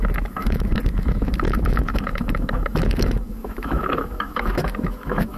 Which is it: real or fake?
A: fake